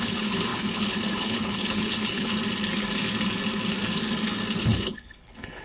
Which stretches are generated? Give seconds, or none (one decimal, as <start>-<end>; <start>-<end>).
0.0-2.3; 4.6-5.6